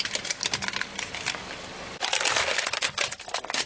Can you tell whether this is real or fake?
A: real